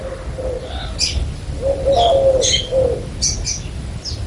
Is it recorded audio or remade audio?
recorded